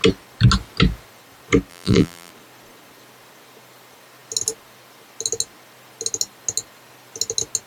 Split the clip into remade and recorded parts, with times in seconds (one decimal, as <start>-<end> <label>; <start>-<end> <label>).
0.0-1.7 recorded; 1.7-2.3 remade; 2.3-7.7 recorded